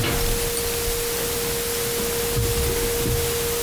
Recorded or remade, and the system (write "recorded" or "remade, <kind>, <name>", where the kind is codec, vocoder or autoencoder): recorded